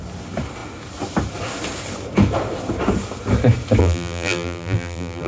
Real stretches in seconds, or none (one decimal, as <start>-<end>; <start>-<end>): 0.0-3.8